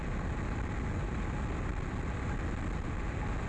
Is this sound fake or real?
real